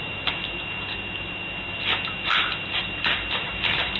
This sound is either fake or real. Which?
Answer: real